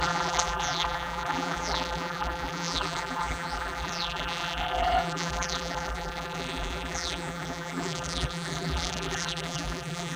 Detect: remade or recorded remade